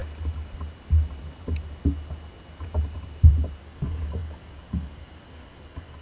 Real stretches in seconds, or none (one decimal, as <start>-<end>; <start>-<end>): 0.0-3.6